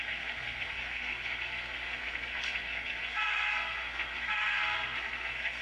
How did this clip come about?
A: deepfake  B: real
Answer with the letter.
A